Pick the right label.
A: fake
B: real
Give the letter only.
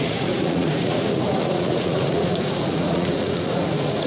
A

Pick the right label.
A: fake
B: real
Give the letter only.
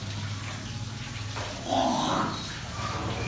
B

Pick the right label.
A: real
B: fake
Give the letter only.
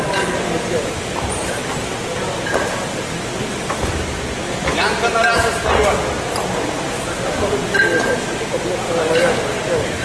A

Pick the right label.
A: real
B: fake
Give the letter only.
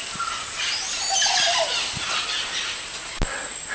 A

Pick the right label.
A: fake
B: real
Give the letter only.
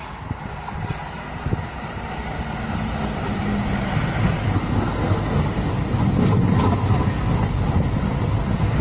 B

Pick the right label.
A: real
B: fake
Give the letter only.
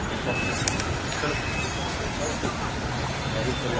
A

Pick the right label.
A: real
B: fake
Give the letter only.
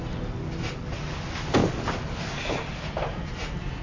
A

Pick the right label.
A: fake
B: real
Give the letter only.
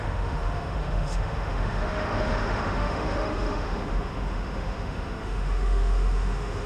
A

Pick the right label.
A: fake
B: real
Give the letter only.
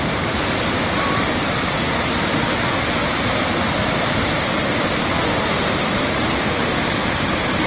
A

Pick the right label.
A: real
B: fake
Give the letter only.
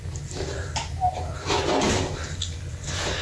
A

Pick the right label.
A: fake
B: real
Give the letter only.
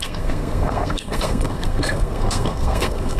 A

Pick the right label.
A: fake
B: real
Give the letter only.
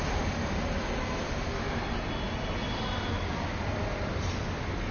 B